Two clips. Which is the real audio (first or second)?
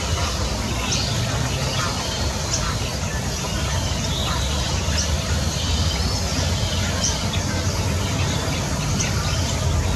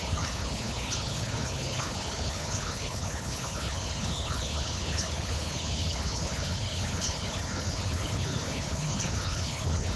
first